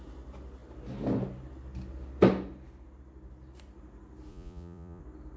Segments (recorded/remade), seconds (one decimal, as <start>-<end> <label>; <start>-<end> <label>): 0.0-4.3 recorded; 4.3-5.0 remade; 5.0-5.4 recorded